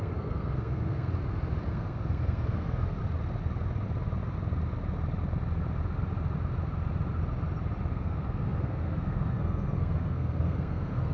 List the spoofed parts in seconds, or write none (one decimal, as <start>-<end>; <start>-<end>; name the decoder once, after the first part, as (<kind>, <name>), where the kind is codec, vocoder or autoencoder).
0.0-1.1 (codec, SNAC); 1.7-3.0; 7.9-11.1